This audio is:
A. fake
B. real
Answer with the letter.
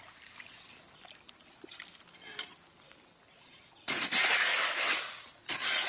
B